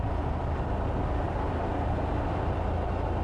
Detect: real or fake real